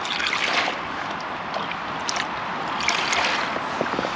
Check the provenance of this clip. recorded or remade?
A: recorded